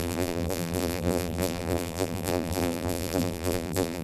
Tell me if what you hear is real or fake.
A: fake